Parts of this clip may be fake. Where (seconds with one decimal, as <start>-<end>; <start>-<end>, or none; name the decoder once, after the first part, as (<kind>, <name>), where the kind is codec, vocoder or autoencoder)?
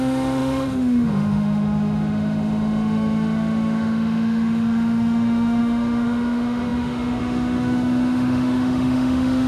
0.0-9.5 (autoencoder, DAC-VAE)